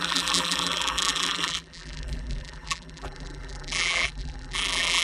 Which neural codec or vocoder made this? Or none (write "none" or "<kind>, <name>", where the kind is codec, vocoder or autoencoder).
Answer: vocoder, BigVGAN v2